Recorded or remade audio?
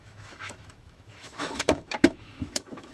remade